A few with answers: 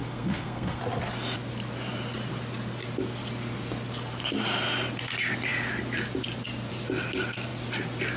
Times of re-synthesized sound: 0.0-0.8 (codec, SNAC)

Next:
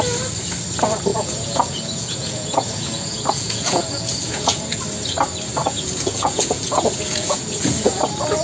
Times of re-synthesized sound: 1.1-4.8 (vocoder, Vocos); 5.6-8.0

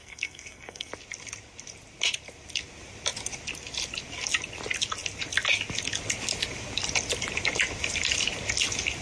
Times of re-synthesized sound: 0.0-0.9 (codec, SNAC)